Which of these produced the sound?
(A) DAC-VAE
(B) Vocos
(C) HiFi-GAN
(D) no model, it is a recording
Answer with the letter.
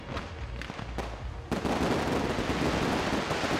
D